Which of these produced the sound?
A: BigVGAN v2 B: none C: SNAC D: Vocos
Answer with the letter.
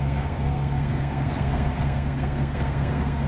C